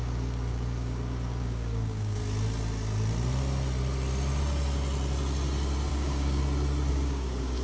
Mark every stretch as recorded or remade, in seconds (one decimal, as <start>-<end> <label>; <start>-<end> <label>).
0.0-2.2 remade; 2.2-5.9 recorded; 5.9-6.4 remade; 6.4-6.9 recorded; 6.9-7.6 remade